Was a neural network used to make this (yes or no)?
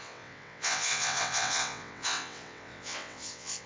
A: yes